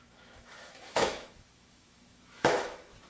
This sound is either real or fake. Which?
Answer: fake